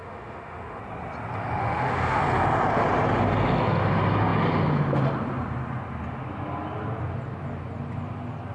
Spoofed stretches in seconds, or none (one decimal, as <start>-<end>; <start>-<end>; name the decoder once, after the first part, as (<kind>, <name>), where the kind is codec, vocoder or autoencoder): 0.0-0.8 (autoencoder, DAC-VAE); 1.6-2.2